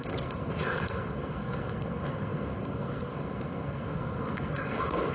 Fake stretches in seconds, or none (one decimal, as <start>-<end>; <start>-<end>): 0.0-5.1